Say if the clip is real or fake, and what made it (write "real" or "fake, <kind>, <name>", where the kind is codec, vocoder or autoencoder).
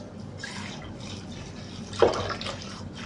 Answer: real